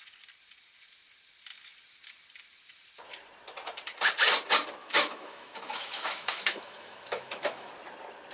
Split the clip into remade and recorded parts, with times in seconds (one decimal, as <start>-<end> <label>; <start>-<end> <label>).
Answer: 0.0-4.8 recorded; 4.8-7.7 remade; 7.7-8.3 recorded